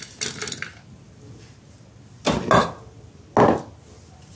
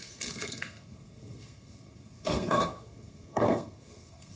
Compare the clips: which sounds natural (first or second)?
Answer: first